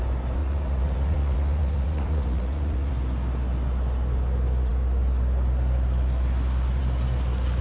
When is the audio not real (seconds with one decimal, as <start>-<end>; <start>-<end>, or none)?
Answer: 0.4-2.9